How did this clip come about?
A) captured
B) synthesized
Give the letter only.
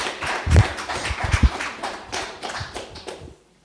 B